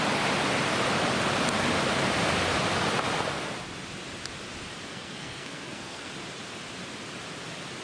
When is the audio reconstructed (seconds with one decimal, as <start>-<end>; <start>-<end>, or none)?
4.9-6.1